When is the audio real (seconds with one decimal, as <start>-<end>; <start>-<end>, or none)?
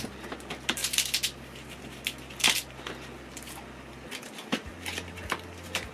0.0-5.9